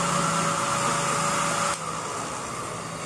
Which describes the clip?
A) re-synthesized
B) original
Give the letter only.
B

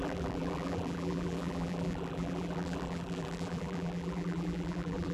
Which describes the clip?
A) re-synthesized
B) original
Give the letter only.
A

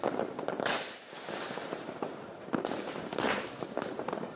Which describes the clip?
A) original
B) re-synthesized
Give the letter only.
B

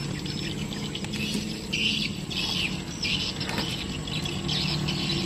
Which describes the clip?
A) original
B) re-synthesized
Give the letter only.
A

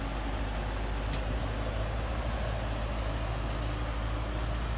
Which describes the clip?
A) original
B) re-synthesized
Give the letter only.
A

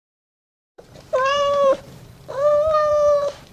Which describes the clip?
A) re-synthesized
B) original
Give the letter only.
A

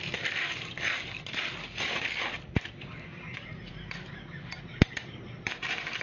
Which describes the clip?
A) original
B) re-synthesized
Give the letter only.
B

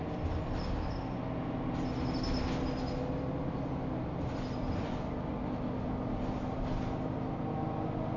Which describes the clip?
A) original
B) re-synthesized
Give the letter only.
A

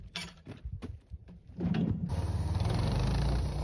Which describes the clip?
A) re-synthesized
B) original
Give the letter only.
A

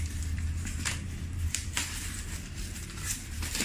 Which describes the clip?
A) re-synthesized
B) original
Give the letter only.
A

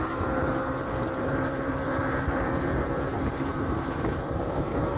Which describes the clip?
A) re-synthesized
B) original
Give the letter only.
A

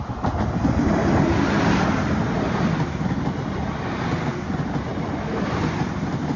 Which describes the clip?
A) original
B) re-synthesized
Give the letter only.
A